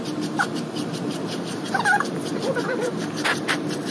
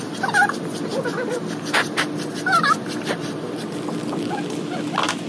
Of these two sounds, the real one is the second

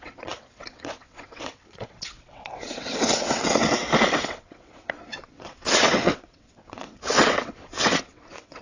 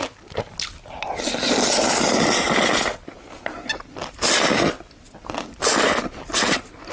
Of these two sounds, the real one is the second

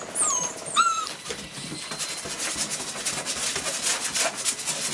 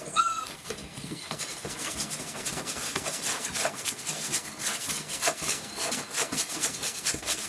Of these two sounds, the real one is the first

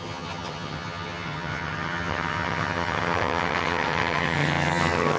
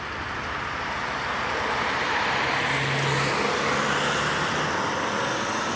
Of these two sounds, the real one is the second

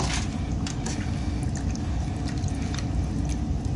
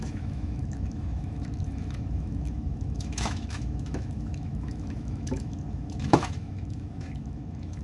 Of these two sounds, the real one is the first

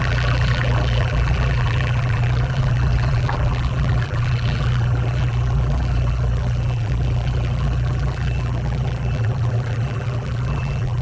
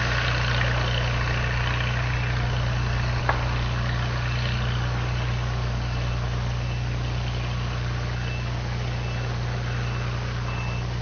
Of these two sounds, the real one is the second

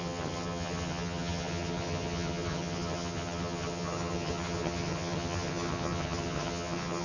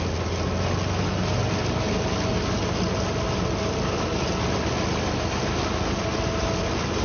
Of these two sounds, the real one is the second